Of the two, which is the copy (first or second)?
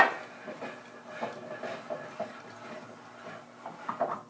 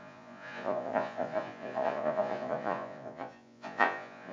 second